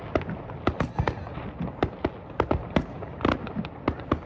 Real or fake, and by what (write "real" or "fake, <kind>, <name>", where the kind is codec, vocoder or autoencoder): real